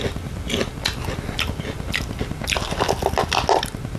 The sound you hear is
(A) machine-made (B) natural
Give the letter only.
B